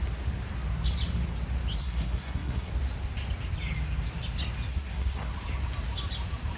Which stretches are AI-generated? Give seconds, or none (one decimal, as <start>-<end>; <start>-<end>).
1.8-2.7; 4.7-5.3